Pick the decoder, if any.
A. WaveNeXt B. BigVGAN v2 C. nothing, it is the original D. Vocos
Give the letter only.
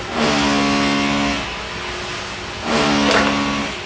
C